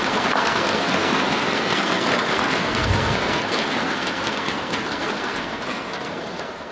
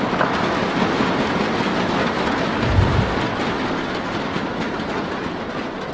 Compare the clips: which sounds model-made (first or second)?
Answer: first